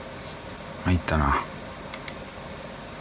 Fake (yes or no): no